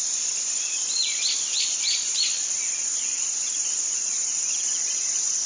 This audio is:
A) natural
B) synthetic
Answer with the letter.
B